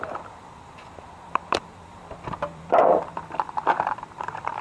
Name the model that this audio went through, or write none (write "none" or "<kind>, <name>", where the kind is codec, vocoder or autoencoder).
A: vocoder, BigVGAN v2